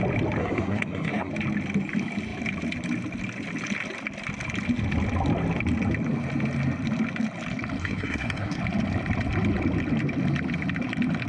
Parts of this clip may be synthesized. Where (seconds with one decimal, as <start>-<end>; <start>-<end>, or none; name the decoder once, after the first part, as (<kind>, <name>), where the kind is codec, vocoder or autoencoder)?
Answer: 0.4-1.3 (codec, SNAC); 7.8-8.6